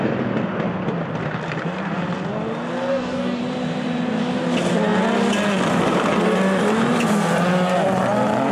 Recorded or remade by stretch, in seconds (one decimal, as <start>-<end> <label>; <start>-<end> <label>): 0.0-2.9 recorded; 2.9-3.4 remade; 3.4-8.5 recorded